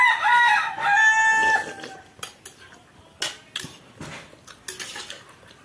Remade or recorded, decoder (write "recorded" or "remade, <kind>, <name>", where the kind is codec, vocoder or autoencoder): recorded